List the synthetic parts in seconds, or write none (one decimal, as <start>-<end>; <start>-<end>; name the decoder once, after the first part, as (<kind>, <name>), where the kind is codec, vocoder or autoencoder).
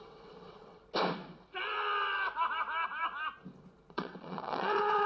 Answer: 0.0-0.8 (vocoder, WaveNeXt); 3.9-5.1